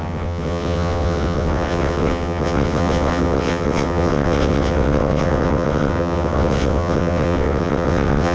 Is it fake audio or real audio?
fake